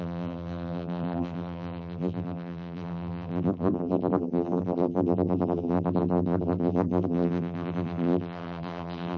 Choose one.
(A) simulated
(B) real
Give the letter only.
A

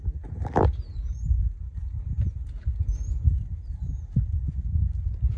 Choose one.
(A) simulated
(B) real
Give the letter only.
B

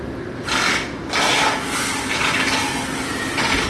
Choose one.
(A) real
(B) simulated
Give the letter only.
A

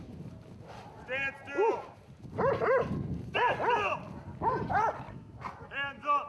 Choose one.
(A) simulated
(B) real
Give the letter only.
B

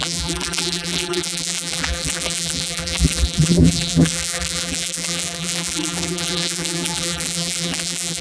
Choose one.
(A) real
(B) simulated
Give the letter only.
B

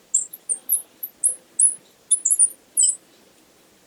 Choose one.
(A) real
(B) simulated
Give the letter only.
A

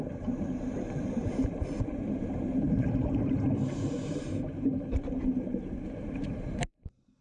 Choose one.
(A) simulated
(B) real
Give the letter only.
A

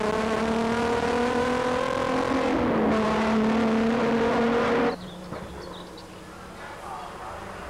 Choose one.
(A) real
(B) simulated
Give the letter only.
A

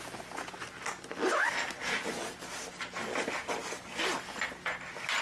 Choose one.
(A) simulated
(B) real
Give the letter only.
B